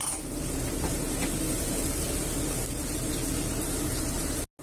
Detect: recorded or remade recorded